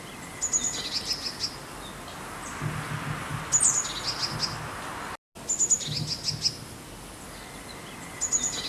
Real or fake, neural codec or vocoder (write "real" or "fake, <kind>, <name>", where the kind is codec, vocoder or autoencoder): real